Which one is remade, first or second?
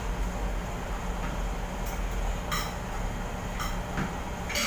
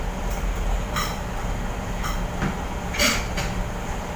second